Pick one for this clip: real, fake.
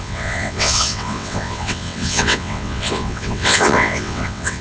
fake